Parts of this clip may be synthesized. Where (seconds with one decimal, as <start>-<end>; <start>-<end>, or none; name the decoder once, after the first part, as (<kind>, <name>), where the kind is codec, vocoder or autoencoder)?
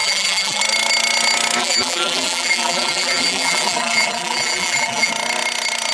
0.0-0.6 (vocoder, BigVGAN v2); 1.6-5.1